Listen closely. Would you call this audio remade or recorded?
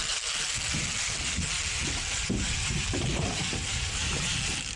remade